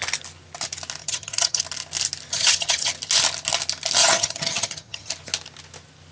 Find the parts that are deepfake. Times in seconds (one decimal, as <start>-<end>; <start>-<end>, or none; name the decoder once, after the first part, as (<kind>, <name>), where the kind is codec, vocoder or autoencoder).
1.0-1.6 (vocoder, HiFi-GAN); 2.3-2.9; 4.0-5.1